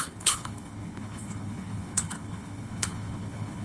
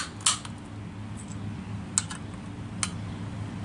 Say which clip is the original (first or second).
second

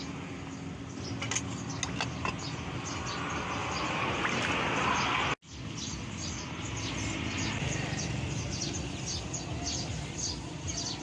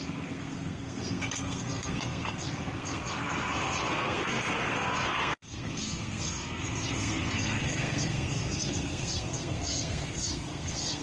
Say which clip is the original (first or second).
first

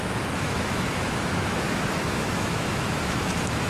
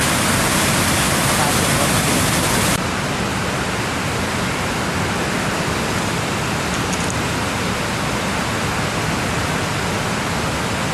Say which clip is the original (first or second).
second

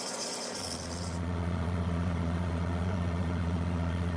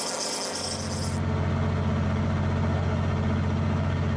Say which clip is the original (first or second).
second